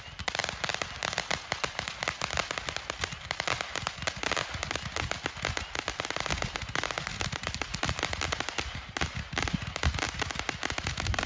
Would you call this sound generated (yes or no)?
no